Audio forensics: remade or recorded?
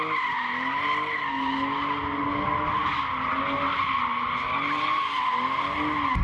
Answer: recorded